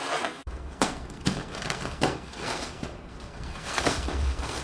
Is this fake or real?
fake